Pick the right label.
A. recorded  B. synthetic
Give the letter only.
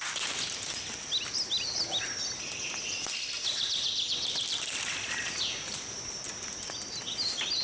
A